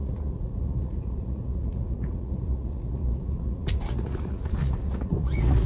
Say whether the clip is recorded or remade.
remade